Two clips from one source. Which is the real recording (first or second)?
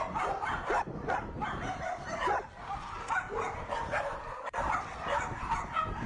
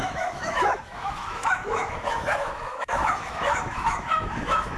first